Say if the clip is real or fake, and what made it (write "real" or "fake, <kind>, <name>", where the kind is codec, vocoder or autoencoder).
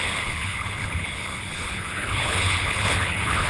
fake, codec, HILCodec